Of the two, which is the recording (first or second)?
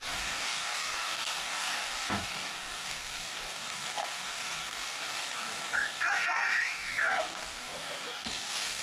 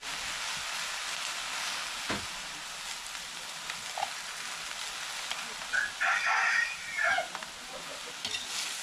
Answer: second